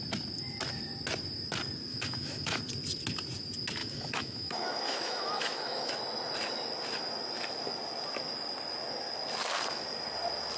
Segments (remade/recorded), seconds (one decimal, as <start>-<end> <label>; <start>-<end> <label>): 0.0-1.9 recorded; 1.9-2.6 remade; 2.6-3.8 recorded; 3.8-5.9 remade; 5.9-10.6 recorded